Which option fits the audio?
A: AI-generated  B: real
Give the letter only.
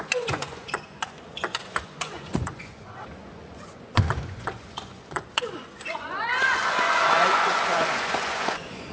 A